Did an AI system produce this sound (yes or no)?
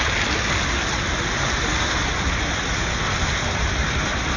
no